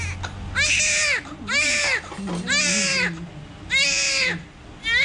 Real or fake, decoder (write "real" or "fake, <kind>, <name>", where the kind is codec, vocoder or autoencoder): real